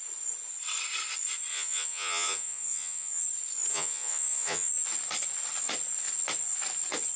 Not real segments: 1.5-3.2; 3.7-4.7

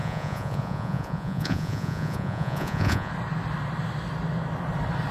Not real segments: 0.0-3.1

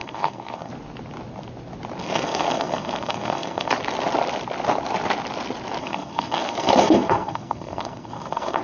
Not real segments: 0.0-0.7; 2.0-3.7; 5.8-8.6